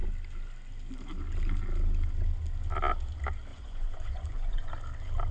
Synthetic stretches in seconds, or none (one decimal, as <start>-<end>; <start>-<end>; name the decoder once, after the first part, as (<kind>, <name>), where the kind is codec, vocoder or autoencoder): 3.5-4.7 (vocoder, Vocos)